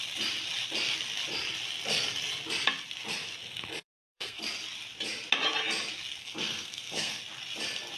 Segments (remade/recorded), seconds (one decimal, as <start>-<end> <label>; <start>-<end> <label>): 0.0-3.8 recorded; 3.8-4.4 remade; 4.4-6.2 recorded; 6.2-7.2 remade; 7.2-8.0 recorded